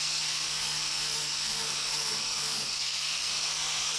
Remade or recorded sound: remade